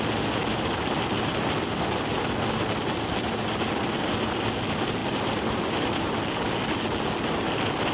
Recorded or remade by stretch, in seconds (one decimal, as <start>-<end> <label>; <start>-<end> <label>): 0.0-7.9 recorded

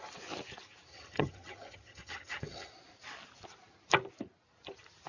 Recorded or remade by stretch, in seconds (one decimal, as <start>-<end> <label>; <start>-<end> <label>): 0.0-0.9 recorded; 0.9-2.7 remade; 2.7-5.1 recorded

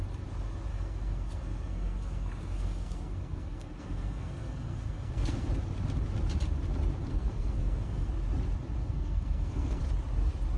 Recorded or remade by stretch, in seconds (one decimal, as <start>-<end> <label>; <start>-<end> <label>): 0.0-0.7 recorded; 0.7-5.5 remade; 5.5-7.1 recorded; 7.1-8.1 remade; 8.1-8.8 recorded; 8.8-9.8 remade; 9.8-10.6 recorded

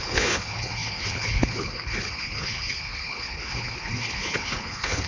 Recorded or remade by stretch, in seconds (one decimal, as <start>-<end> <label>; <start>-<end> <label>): 0.0-5.1 remade

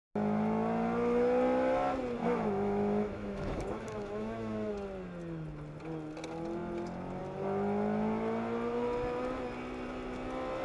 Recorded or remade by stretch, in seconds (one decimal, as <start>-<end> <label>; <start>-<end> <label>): 0.0-2.2 recorded; 2.2-4.7 remade; 4.7-10.6 recorded

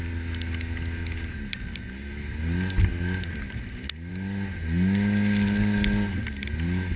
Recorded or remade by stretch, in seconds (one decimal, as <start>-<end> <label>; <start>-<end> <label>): 0.0-7.0 recorded